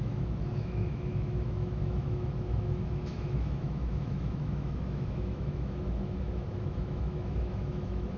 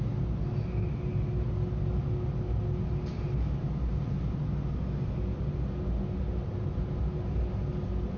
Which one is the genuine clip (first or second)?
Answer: second